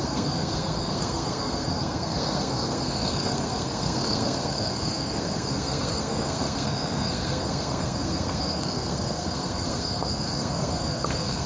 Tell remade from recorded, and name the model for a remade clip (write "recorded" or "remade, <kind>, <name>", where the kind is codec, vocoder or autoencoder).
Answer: remade, codec, SNAC